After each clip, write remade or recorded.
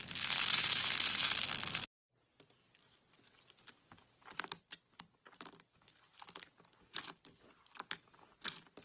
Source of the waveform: recorded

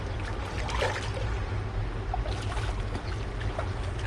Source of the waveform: recorded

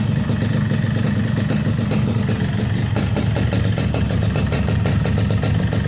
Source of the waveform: recorded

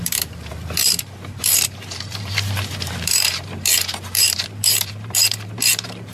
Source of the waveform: remade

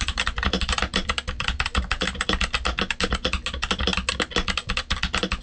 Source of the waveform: recorded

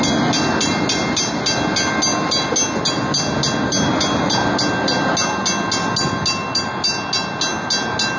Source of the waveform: recorded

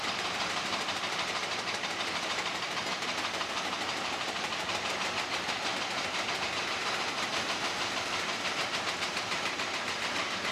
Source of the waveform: remade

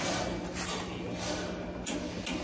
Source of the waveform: recorded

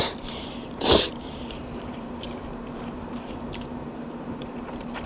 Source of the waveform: remade